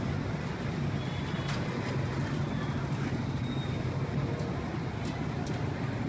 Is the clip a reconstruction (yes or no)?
no